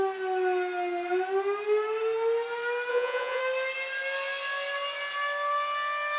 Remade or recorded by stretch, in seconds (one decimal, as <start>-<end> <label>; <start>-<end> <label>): 0.0-2.9 recorded; 2.9-3.4 remade; 3.4-6.2 recorded